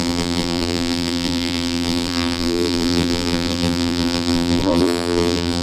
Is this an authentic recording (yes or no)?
no